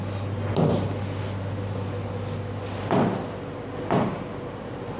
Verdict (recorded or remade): recorded